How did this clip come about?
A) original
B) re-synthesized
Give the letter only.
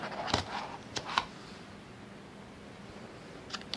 A